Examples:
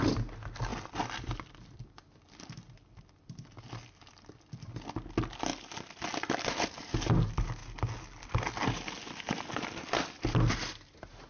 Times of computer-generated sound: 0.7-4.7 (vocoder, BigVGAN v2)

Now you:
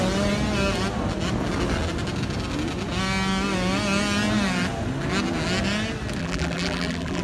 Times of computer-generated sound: 6.2-7.2 (vocoder, BigVGAN v2)

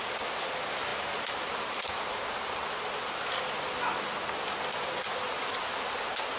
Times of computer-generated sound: none

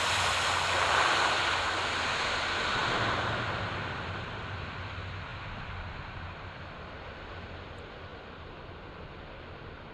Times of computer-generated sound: 5.3-6.7 (vocoder, BigVGAN v2)

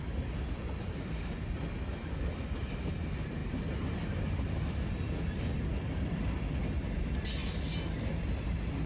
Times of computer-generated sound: none